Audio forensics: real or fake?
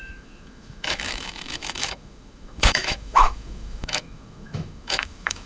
fake